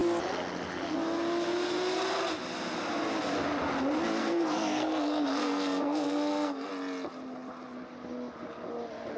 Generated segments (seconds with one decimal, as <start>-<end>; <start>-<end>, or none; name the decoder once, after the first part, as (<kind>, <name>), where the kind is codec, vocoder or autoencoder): 4.2-6.7 (codec, SNAC)